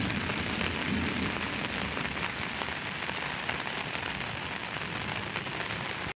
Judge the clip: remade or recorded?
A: recorded